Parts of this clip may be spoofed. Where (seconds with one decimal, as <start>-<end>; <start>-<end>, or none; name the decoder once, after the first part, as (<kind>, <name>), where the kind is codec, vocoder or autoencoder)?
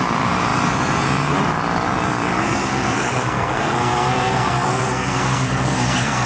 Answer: 2.3-6.3 (codec, SNAC)